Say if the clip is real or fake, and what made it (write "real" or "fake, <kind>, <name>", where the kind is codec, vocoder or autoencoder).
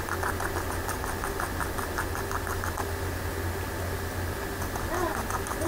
real